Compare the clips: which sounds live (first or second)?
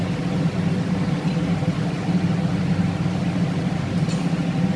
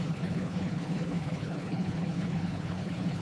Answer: first